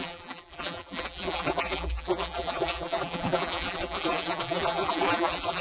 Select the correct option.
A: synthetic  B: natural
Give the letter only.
A